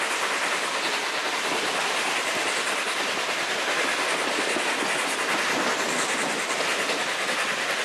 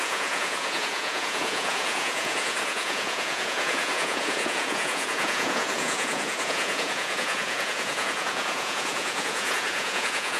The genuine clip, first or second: first